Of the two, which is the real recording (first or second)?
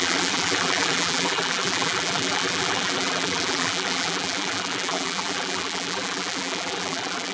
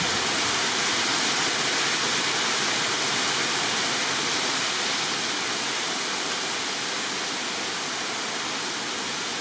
second